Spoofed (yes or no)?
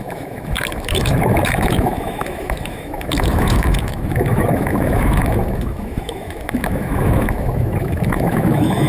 yes